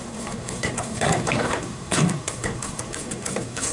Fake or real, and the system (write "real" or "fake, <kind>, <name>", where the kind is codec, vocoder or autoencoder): fake, codec, SNAC